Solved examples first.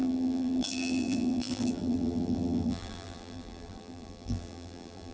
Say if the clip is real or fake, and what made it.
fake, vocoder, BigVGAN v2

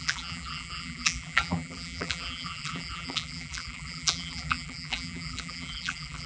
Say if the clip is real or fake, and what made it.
fake, vocoder, BigVGAN v2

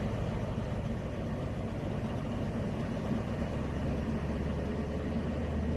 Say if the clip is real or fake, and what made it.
real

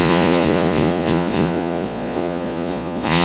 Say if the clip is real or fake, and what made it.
fake, vocoder, Vocos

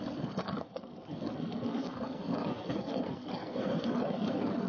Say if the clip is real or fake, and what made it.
fake, codec, SNAC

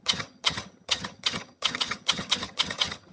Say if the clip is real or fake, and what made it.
fake, vocoder, HiFi-GAN